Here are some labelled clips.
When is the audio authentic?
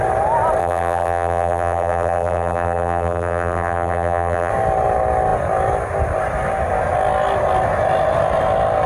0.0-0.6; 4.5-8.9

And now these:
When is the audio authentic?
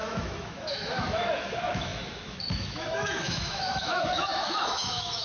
none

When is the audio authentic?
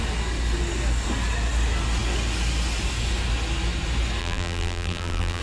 0.0-4.2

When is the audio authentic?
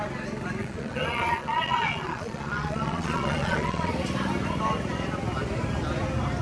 0.0-0.6; 3.9-6.4